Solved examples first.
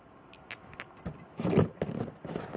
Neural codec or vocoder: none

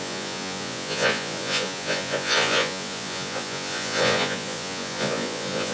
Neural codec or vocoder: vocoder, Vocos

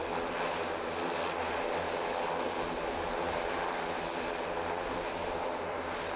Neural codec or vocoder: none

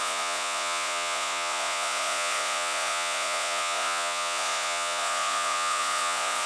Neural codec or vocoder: vocoder, Vocos